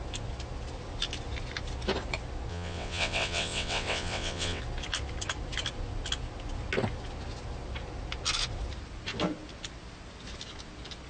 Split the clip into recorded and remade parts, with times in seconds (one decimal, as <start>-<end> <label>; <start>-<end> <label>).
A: 0.0-2.5 recorded; 2.5-4.6 remade; 4.6-11.1 recorded